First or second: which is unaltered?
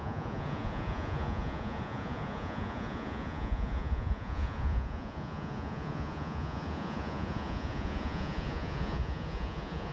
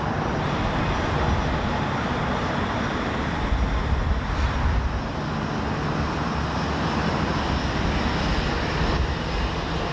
second